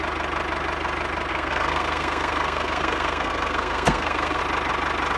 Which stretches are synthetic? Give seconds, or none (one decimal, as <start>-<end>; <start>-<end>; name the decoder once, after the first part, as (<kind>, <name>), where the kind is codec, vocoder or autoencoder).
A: 1.3-4.4 (codec, SNAC)